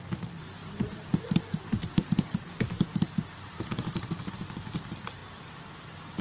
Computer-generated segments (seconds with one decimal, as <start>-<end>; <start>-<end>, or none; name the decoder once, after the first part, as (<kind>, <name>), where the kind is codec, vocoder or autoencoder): 0.6-4.3 (vocoder, BigVGAN v2)